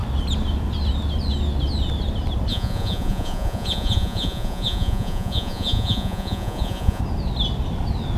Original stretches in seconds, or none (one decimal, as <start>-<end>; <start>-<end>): 0.0-2.5; 7.0-8.2